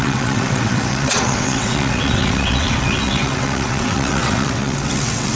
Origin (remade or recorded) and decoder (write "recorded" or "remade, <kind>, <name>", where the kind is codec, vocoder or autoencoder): remade, vocoder, WaveNeXt